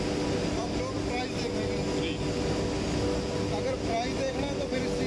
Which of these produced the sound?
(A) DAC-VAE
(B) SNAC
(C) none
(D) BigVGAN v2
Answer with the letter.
C